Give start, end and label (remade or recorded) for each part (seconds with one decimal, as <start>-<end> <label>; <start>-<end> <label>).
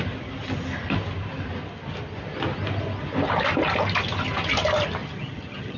0.0-5.0 recorded; 5.0-5.8 remade